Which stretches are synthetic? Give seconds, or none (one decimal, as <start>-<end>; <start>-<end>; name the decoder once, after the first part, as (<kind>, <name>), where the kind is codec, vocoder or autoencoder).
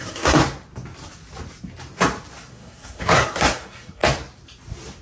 0.0-0.4 (codec, SNAC); 2.5-4.0